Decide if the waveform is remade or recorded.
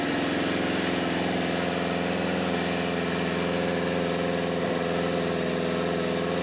recorded